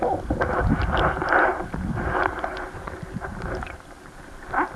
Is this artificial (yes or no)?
no